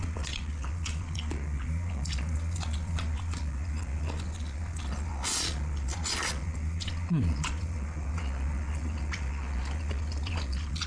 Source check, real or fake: fake